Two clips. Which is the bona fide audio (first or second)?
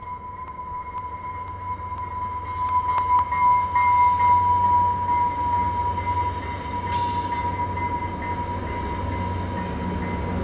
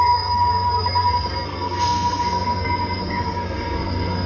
first